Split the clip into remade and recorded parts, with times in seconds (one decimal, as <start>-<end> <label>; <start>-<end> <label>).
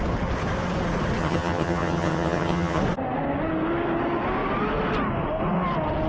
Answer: 0.0-1.2 recorded; 1.2-2.8 remade; 2.8-6.1 recorded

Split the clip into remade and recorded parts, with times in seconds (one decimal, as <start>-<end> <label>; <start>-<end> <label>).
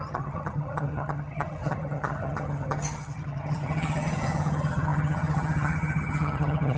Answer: 0.0-6.8 remade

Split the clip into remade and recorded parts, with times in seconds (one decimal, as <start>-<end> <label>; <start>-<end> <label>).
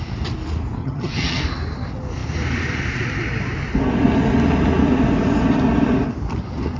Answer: 0.0-0.8 recorded; 0.8-1.4 remade; 1.4-6.8 recorded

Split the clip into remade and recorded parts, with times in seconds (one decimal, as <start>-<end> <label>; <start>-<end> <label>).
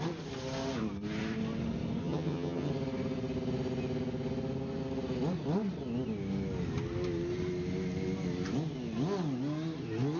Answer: 0.0-2.0 recorded; 2.0-2.7 remade; 2.7-10.2 recorded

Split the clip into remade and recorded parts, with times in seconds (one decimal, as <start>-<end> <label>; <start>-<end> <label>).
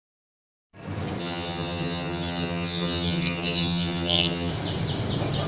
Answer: 0.0-1.2 recorded; 1.2-4.5 remade; 4.5-5.5 recorded